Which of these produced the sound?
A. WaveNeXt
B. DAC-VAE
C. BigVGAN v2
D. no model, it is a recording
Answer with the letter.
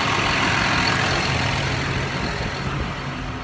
D